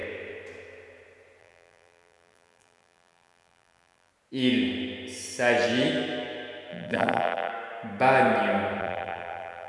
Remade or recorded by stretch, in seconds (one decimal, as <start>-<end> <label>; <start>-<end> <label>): 0.0-1.4 recorded; 1.4-4.1 remade; 4.1-6.7 recorded; 6.7-7.5 remade; 7.5-8.8 recorded; 8.8-9.7 remade